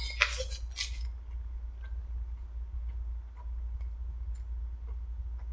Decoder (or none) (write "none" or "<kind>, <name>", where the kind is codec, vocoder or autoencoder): none